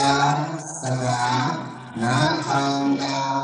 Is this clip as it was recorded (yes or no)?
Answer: no